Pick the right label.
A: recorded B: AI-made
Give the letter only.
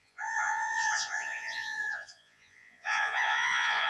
B